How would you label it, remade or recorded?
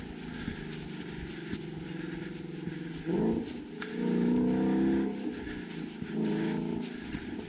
recorded